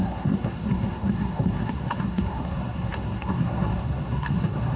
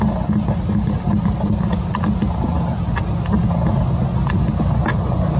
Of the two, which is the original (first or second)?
second